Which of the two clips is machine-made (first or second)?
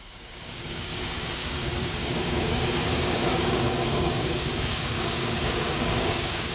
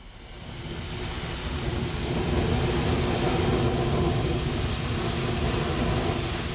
first